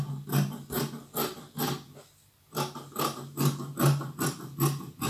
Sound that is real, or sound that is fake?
real